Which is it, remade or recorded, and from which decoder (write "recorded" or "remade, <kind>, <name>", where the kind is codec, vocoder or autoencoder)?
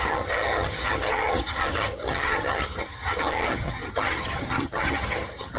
remade, vocoder, HiFi-GAN